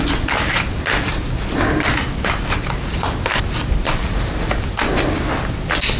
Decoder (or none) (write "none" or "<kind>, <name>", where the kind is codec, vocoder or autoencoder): none